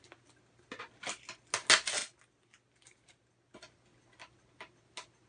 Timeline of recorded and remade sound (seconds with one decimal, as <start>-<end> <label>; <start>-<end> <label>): 0.0-5.3 recorded